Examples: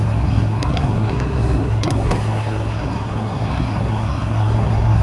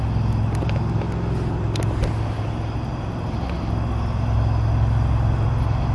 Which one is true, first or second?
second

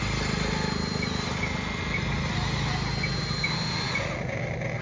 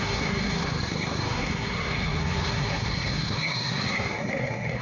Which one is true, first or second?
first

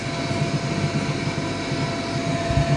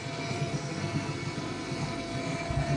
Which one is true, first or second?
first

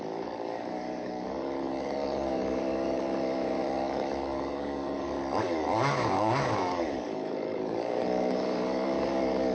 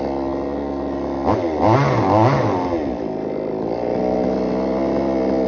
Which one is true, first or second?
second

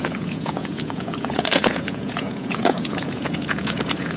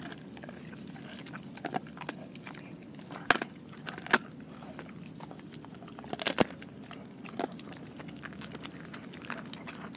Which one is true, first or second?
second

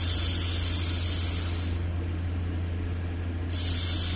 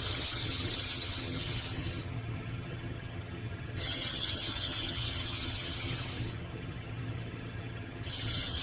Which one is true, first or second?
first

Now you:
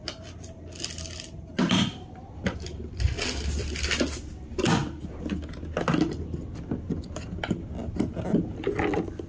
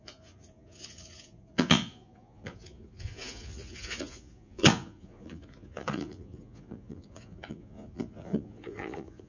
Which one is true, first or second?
first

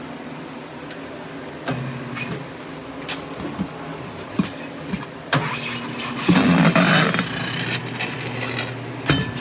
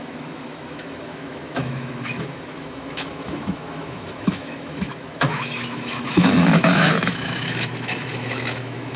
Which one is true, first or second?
first